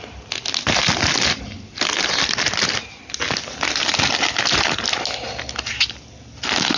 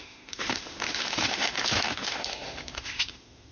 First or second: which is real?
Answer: first